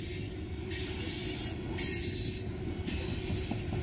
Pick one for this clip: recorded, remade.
recorded